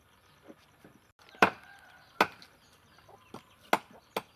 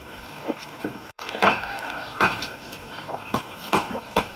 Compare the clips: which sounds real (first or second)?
first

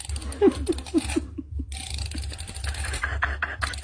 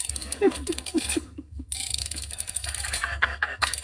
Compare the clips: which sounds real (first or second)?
first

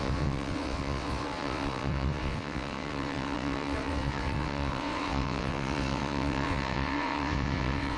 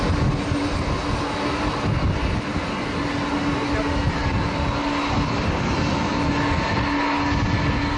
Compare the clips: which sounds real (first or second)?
second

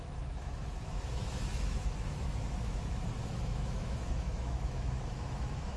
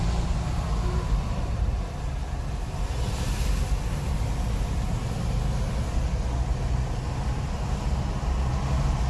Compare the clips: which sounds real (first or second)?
second